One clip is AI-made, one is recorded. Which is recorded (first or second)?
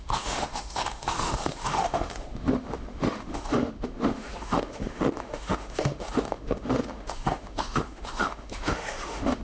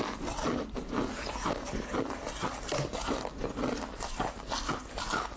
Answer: second